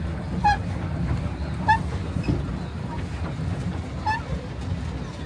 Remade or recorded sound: recorded